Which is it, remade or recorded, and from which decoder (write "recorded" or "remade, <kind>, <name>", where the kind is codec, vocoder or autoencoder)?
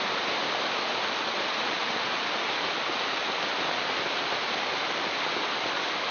recorded